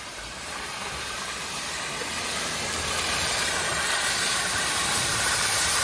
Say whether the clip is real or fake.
fake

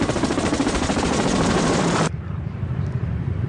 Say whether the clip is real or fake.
fake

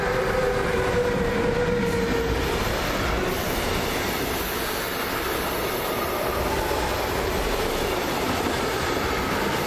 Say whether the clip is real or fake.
real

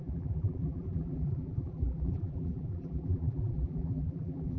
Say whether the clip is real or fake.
fake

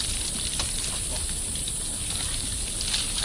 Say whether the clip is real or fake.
real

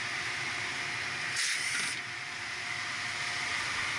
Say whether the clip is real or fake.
fake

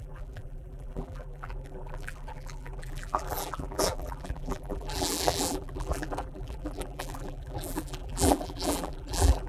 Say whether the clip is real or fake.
fake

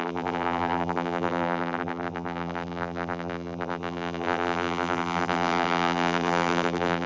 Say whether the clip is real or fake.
fake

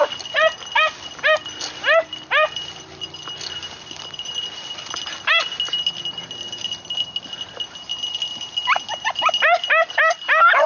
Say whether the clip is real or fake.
real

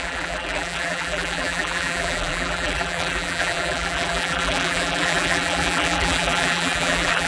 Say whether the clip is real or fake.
fake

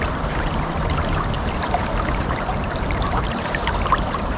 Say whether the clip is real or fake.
fake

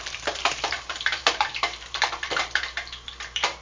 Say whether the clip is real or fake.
fake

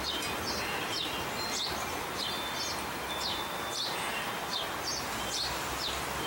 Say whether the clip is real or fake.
real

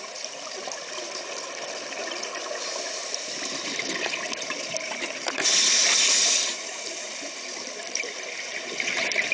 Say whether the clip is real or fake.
fake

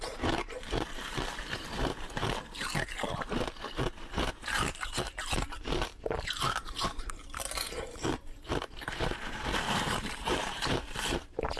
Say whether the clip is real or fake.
fake